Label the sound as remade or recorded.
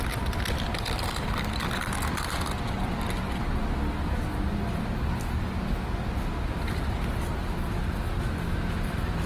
recorded